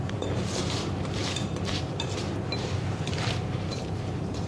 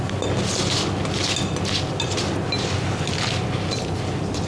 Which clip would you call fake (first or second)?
first